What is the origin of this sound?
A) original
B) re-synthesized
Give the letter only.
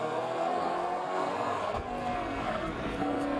B